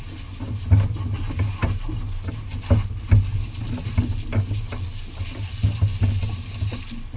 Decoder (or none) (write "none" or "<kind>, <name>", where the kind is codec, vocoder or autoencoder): none